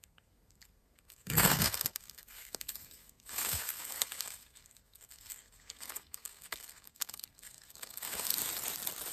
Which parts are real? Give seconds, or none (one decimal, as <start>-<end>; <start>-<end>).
8.3-9.1

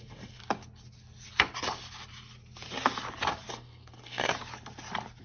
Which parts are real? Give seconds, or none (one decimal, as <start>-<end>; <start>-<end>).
0.4-3.5; 4.3-5.2

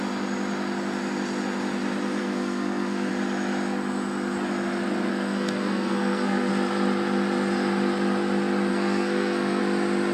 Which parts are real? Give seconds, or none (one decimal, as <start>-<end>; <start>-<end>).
0.0-2.2; 3.1-5.1; 6.5-8.7; 9.6-10.1